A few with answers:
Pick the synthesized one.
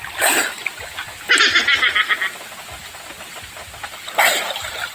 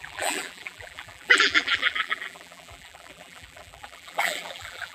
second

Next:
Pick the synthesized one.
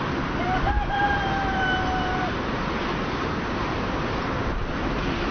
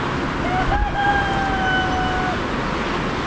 first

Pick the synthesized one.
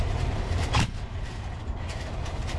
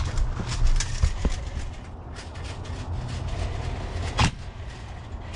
first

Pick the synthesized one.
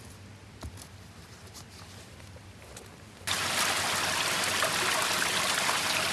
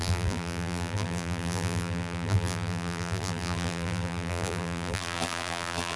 second